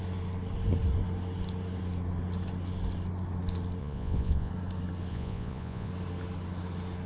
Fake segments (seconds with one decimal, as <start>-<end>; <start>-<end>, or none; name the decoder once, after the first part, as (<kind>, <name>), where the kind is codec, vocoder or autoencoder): 3.8-4.5 (vocoder, Vocos); 5.1-5.9